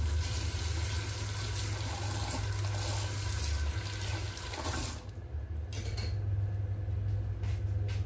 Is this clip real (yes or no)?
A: yes